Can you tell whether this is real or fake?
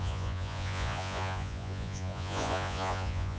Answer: fake